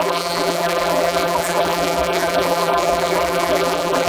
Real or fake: fake